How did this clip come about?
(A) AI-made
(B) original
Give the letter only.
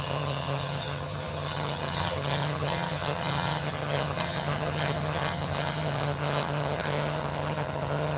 A